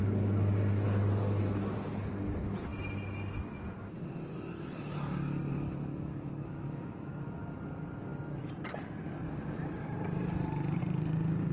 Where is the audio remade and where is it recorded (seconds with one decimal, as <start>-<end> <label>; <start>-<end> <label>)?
0.0-5.5 recorded; 5.5-7.2 remade; 7.2-11.5 recorded